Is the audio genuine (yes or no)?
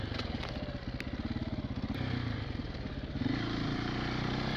yes